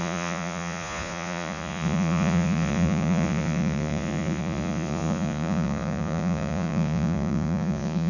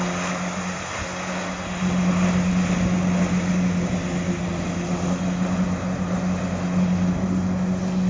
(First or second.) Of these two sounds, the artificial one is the first